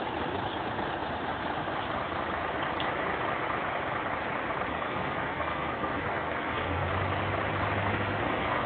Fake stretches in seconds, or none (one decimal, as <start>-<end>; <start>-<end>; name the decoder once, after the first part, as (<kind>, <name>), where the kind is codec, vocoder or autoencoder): 4.7-6.9 (codec, SNAC); 7.8-8.7

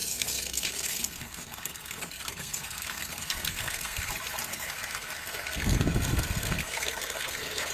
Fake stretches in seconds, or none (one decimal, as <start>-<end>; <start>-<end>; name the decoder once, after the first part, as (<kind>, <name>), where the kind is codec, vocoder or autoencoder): 0.0-4.1 (codec, SNAC); 4.5-7.7

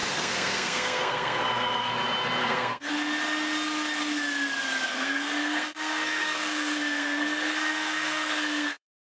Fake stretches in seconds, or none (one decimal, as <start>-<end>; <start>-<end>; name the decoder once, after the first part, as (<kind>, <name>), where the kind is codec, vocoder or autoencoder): 0.0-1.9 (codec, SNAC); 2.4-2.9; 4.9-9.0

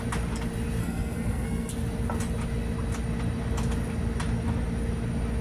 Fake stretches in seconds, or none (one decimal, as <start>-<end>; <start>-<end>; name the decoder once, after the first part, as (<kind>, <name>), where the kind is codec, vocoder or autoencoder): 0.8-1.7 (codec, SNAC)

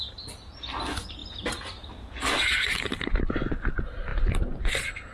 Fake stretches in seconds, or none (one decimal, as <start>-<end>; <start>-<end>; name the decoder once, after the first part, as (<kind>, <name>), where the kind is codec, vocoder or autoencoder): none

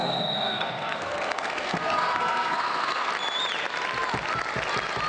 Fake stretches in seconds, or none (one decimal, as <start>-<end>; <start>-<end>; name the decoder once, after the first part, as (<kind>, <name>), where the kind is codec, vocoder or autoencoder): 0.0-3.1 (codec, SNAC)

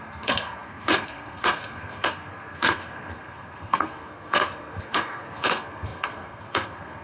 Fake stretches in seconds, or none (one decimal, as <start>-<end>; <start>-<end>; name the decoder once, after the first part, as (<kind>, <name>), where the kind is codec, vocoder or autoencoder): 0.0-7.0 (codec, SNAC)

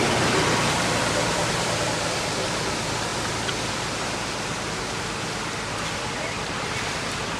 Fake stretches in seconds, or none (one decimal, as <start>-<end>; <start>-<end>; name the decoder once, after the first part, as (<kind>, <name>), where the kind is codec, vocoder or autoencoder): none